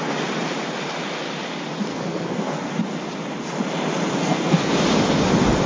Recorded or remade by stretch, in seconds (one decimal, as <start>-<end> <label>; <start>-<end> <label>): 0.0-1.9 recorded; 1.9-2.7 remade; 2.7-4.1 recorded; 4.1-4.7 remade; 4.7-5.7 recorded